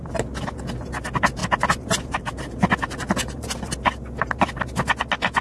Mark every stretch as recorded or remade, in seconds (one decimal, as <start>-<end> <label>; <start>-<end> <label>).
0.0-1.4 recorded; 1.4-3.4 remade; 3.4-5.4 recorded